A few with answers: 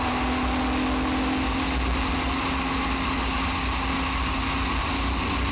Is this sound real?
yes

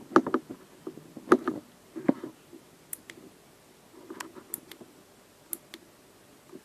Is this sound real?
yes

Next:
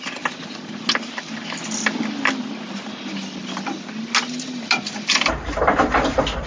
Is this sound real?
yes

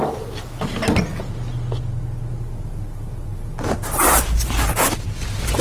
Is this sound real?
yes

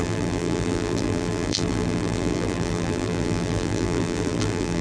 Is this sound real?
no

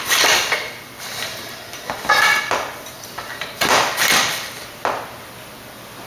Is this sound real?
no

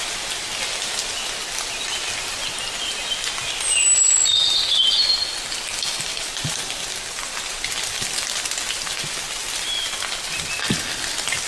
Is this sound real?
yes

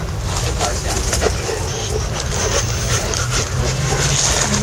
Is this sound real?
yes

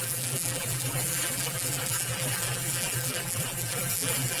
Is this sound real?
no